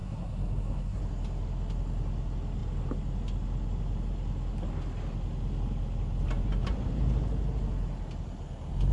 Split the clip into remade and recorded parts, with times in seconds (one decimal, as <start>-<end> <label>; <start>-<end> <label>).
0.0-1.0 remade; 1.0-8.9 recorded